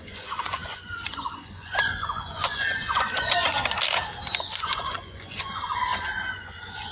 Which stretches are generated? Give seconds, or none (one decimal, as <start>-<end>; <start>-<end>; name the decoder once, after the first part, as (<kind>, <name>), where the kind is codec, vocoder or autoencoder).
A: 0.0-3.6 (vocoder, Vocos); 4.4-6.9